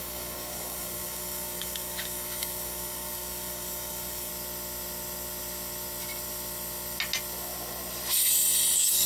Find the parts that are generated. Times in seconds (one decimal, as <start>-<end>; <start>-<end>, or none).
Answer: 0.0-4.3